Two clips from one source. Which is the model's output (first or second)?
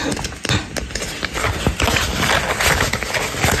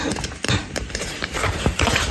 second